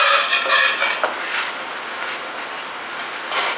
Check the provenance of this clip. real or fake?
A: real